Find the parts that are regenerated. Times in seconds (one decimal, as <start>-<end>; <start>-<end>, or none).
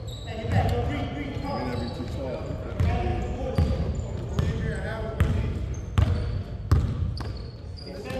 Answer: none